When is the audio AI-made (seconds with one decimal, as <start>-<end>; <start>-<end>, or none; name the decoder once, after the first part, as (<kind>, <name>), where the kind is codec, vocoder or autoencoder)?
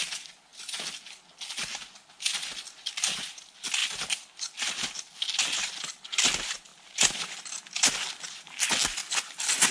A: none